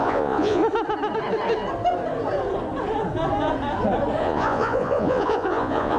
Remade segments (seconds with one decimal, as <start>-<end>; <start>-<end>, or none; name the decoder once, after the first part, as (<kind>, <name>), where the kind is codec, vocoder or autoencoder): 0.0-0.6 (vocoder, Vocos); 4.2-6.0